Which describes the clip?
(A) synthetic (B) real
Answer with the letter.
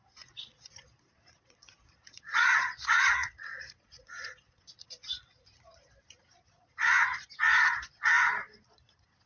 A